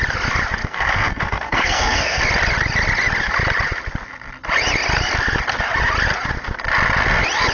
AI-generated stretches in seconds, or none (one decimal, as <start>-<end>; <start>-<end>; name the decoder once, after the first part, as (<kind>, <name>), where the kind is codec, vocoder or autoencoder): 0.6-2.2 (codec, SNAC)